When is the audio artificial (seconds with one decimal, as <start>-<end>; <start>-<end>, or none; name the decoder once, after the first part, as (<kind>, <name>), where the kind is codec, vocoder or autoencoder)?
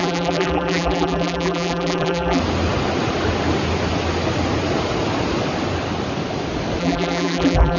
0.0-2.4 (vocoder, BigVGAN v2); 6.8-7.8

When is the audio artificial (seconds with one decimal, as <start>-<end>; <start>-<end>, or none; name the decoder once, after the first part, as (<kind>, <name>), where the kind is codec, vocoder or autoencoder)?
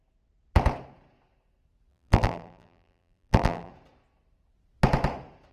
1.9-3.7 (vocoder, BigVGAN v2)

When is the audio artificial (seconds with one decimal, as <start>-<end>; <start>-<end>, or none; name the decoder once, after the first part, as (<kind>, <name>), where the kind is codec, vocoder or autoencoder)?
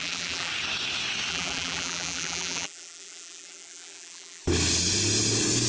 0.0-0.5 (vocoder, BigVGAN v2); 1.3-4.4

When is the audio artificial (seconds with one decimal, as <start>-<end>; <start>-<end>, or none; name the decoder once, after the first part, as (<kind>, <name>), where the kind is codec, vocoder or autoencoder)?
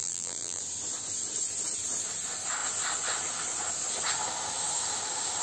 0.0-0.6 (vocoder, BigVGAN v2)